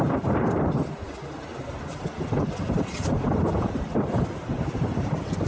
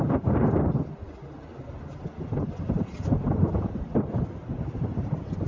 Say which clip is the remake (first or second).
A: first